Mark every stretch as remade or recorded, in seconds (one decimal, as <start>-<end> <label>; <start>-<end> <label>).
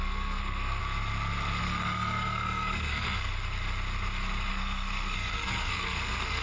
0.0-0.8 remade; 0.8-1.6 recorded; 1.6-3.3 remade; 3.3-4.5 recorded; 4.5-6.4 remade